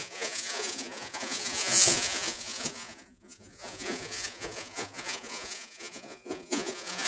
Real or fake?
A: fake